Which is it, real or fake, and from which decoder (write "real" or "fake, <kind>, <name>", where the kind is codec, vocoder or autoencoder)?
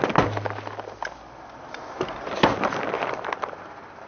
real